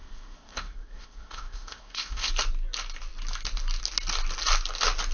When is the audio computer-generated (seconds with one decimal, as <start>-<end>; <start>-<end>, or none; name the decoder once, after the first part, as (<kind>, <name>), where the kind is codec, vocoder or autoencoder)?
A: 0.0-2.3 (codec, ZipCodec)